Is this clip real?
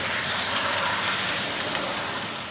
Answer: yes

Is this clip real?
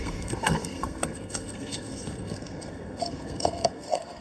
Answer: no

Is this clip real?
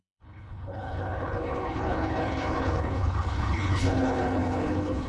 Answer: no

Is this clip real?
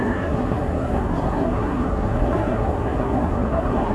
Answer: no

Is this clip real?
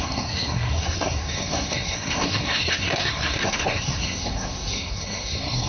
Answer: no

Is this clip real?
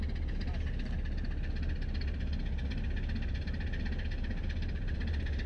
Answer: yes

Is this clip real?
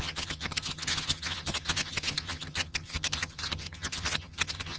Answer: no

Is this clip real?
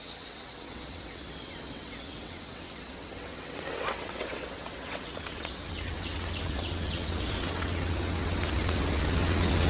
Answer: no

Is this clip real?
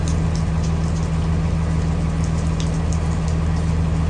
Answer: yes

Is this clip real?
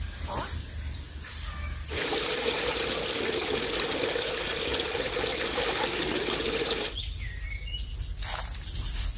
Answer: yes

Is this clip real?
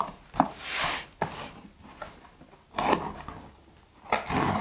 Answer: yes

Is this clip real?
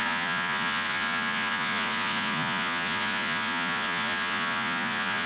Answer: no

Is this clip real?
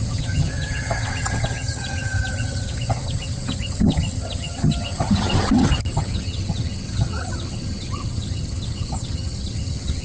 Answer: no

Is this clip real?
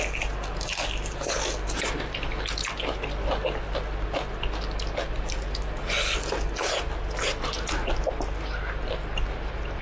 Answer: yes